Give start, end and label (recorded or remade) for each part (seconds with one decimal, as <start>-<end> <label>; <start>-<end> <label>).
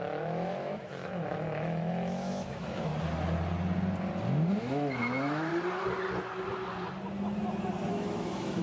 0.0-2.9 remade; 2.9-4.5 recorded; 4.5-5.5 remade; 5.5-7.9 recorded; 7.9-8.6 remade